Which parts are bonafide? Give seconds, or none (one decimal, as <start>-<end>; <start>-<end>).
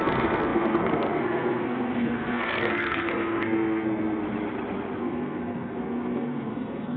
4.2-5.0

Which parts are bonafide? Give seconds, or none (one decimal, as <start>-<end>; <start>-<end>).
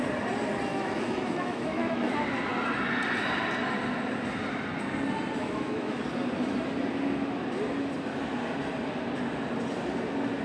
0.0-0.7; 2.1-5.4; 6.0-10.4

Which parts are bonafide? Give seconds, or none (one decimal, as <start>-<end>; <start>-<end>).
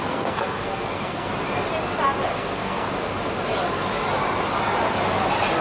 1.3-2.3; 2.9-5.6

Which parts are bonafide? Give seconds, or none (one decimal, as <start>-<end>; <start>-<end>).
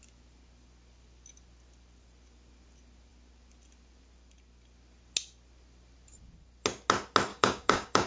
0.0-7.3